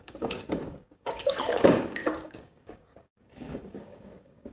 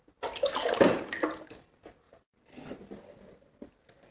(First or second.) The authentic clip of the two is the second